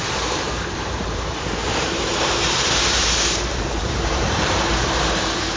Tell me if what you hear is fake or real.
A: fake